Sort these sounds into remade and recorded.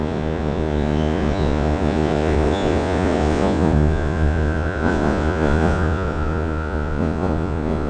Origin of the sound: remade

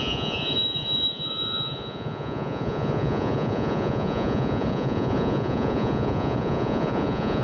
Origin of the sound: remade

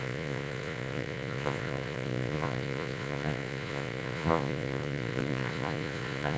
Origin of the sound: remade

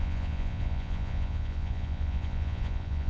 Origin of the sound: remade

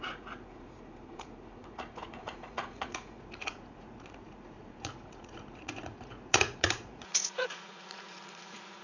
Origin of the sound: remade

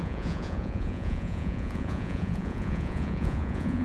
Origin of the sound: remade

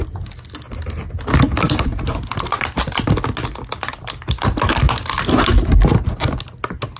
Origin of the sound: recorded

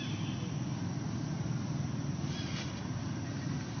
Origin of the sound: recorded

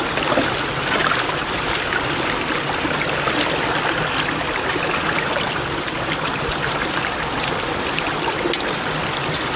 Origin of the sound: recorded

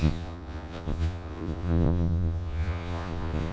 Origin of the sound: remade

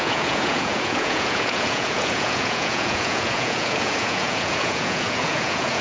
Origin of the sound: remade